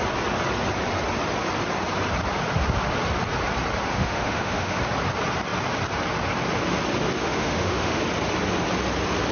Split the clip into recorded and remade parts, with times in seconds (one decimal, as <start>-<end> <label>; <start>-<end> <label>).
0.0-3.9 recorded; 3.9-4.8 remade; 4.8-7.2 recorded; 7.2-8.0 remade; 8.0-9.3 recorded